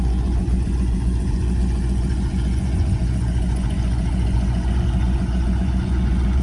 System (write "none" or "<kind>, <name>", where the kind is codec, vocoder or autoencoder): vocoder, Vocos